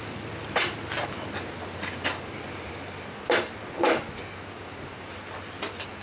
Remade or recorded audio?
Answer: recorded